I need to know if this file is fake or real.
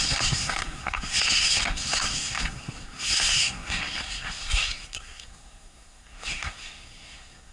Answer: fake